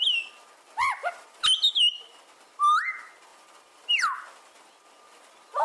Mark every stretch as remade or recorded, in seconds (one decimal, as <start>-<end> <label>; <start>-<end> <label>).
0.0-5.6 recorded